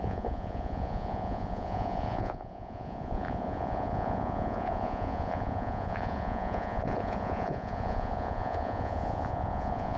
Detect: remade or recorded remade